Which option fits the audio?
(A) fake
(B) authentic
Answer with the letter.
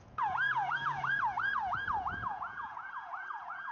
A